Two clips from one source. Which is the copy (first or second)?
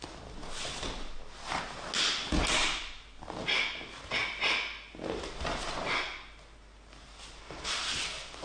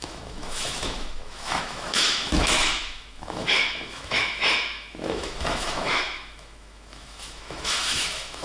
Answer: second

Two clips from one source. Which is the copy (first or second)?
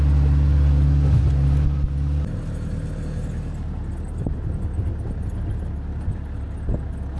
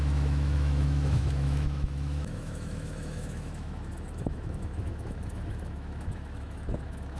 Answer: second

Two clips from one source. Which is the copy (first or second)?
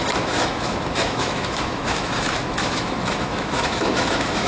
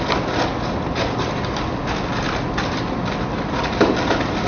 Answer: first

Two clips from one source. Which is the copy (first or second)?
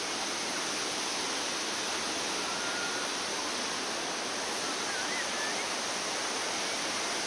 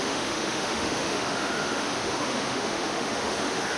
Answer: second